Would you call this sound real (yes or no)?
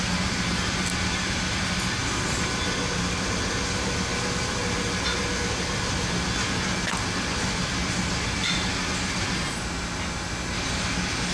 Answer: yes